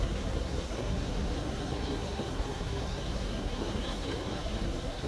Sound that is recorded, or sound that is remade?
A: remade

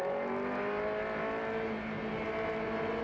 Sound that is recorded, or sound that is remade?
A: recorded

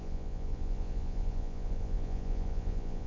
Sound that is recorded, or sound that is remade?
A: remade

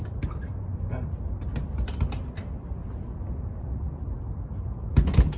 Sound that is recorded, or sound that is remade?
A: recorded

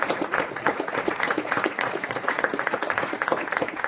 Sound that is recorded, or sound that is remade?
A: remade